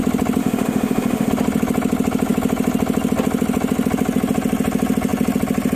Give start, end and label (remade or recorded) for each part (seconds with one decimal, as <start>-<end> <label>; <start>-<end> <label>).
0.0-0.4 recorded; 0.4-1.3 remade; 1.3-5.8 recorded